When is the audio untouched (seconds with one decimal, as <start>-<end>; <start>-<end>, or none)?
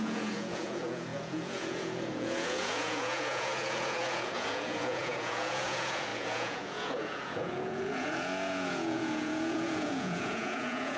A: none